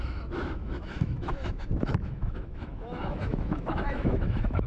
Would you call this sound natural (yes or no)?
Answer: no